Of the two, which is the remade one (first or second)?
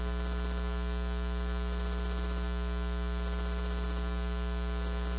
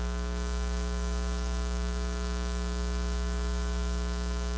second